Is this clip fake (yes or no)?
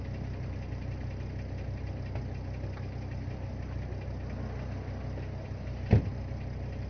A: no